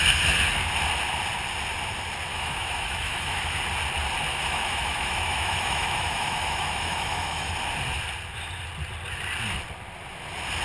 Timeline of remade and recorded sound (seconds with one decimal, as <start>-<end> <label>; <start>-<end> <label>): 0.0-2.3 recorded; 2.3-3.6 remade; 3.6-4.3 recorded; 4.3-7.5 remade; 7.5-10.6 recorded